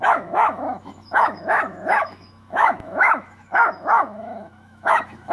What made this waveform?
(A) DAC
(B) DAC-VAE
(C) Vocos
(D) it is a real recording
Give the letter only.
B